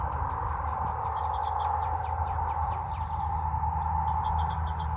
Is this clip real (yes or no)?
yes